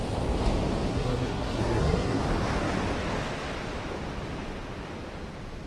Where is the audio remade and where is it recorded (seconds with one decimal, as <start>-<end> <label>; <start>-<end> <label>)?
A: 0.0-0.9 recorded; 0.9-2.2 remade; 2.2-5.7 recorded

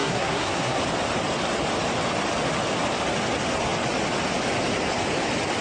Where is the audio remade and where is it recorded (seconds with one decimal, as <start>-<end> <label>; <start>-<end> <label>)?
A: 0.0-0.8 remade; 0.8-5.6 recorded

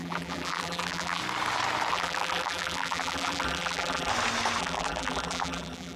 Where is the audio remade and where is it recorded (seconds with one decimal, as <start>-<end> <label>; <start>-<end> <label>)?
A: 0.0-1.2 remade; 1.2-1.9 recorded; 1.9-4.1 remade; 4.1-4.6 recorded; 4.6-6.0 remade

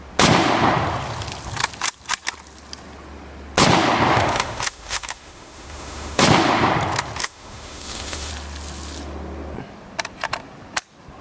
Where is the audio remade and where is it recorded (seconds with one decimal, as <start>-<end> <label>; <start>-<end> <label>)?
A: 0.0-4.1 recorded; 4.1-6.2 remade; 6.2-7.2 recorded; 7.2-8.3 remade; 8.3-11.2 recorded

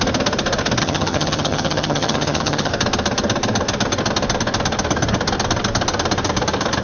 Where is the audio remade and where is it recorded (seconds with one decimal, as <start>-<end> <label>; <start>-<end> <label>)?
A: 0.0-0.8 recorded; 0.8-2.7 remade; 2.7-6.8 recorded

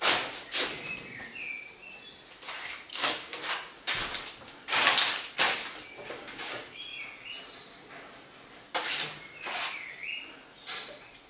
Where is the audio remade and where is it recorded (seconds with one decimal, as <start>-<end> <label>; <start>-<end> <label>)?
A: 0.0-2.9 recorded; 2.9-3.4 remade; 3.4-11.3 recorded

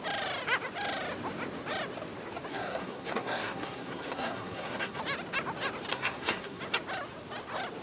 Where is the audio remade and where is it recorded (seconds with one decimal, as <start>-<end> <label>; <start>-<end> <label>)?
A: 0.0-2.5 recorded; 2.5-5.0 remade; 5.0-5.9 recorded; 5.9-6.6 remade; 6.6-7.8 recorded